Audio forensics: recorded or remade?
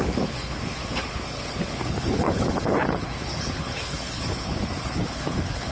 remade